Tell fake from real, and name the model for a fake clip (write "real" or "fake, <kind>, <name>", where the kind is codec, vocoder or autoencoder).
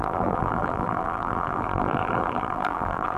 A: fake, vocoder, BigVGAN v2